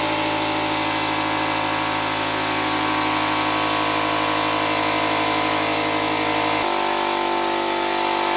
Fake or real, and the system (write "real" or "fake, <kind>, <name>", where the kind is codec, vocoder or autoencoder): real